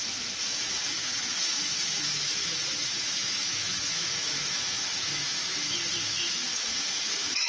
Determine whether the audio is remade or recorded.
remade